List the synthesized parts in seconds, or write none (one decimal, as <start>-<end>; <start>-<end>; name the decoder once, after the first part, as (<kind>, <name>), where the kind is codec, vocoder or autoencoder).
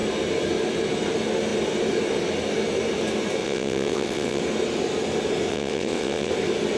3.4-4.4 (vocoder, WaveNeXt); 5.5-6.3